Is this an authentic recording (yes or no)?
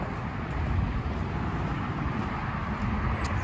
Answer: yes